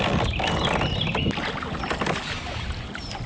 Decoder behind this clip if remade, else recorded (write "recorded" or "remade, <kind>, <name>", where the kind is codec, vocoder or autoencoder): recorded